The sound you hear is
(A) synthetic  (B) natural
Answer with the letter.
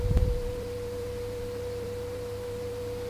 A